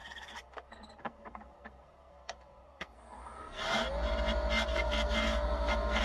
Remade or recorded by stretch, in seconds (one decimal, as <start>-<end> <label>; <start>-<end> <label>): 0.0-3.6 remade; 3.6-4.7 recorded; 4.7-6.0 remade